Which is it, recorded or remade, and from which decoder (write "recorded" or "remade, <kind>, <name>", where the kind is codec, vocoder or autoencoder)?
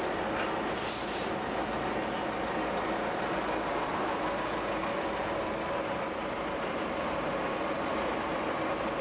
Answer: recorded